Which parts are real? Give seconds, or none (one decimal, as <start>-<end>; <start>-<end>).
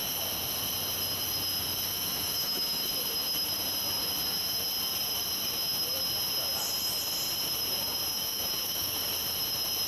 0.0-1.9; 2.9-8.1; 9.0-9.9